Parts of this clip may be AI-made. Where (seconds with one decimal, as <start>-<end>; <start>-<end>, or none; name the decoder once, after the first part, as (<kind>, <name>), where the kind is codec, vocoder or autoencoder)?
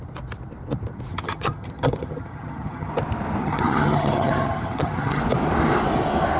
1.1-2.9 (vocoder, HiFi-GAN); 3.4-5.2